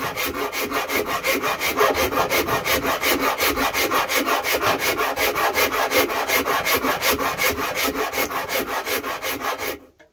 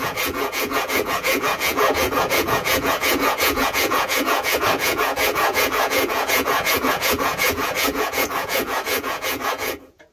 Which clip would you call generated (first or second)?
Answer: second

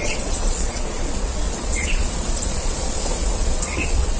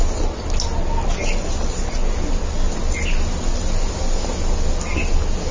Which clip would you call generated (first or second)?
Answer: first